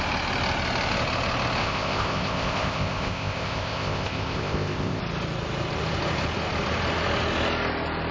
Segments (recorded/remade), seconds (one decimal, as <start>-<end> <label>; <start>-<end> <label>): 0.0-1.6 recorded; 1.6-5.0 remade; 5.0-8.1 recorded